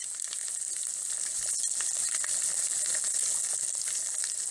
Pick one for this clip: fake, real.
real